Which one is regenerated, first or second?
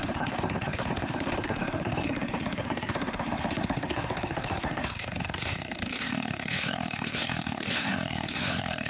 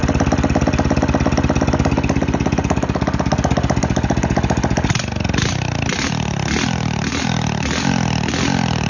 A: first